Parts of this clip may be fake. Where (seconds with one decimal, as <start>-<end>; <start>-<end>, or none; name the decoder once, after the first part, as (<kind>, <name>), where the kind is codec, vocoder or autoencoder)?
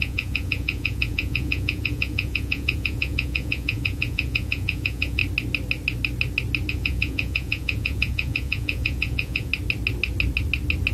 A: 0.0-5.2 (vocoder, Vocos); 6.7-9.5